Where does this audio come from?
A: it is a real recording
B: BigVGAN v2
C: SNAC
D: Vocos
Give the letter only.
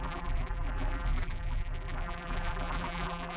B